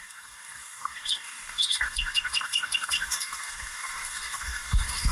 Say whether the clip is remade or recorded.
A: remade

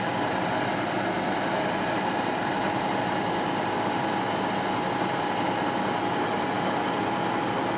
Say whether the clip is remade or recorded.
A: recorded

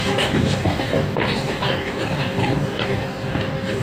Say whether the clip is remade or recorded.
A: remade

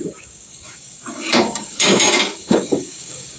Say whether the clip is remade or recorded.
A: remade